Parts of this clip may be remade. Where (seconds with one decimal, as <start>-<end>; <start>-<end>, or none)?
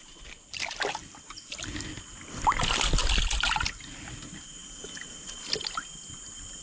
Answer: none